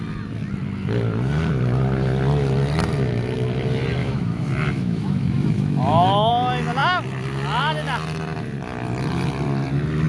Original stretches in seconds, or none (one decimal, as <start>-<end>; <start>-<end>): 0.0-4.0; 6.3-10.1